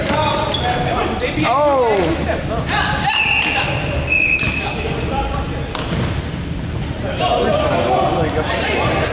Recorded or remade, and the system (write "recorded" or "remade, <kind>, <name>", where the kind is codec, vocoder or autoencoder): recorded